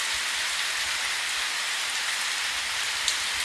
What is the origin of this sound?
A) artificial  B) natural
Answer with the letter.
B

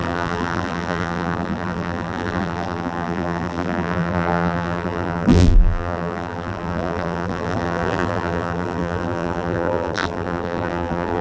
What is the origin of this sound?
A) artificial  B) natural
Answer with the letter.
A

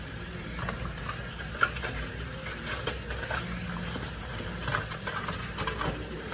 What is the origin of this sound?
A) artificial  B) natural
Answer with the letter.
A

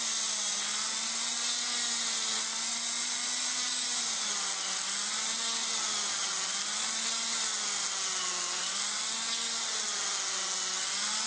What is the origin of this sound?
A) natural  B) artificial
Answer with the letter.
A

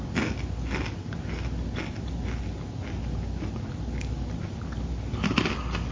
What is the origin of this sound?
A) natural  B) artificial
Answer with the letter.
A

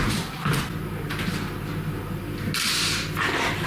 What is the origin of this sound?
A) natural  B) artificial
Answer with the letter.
A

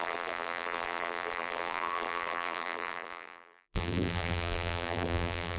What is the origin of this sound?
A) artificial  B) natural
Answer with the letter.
A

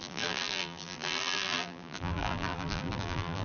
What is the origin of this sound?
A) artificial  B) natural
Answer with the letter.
A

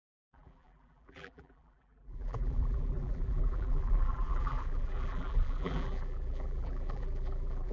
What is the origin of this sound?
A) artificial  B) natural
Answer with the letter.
A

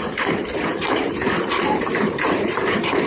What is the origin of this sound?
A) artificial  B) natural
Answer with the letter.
A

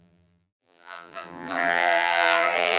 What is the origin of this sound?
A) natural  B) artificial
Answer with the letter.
B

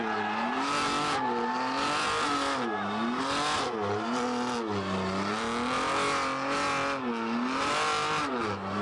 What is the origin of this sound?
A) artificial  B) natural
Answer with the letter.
B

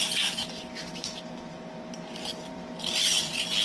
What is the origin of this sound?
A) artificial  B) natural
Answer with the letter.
A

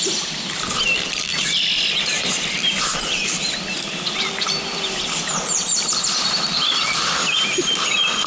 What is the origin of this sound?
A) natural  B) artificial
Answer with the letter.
B